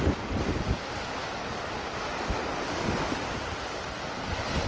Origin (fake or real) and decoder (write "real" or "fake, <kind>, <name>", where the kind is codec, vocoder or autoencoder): real